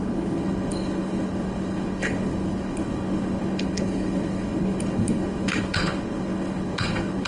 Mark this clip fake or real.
fake